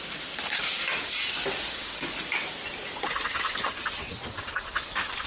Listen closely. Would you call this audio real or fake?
real